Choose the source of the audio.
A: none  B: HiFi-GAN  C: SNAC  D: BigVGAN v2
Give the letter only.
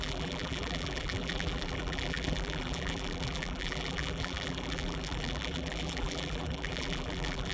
D